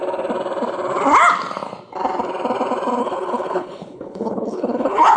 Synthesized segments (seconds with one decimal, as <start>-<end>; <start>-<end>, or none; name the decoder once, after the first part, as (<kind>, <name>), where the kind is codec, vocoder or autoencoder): 3.0-5.2 (codec, HILCodec)